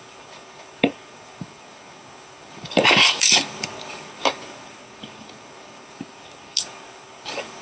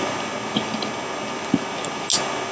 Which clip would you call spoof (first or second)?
first